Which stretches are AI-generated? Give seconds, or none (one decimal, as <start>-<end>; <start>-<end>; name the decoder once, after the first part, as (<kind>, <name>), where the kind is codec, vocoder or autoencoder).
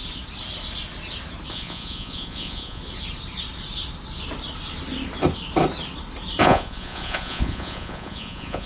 1.5-2.8 (vocoder, Vocos); 6.4-8.7